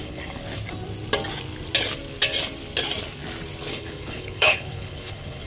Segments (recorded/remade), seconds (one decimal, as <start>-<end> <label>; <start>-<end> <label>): 0.0-0.4 remade; 0.4-3.7 recorded; 3.7-5.5 remade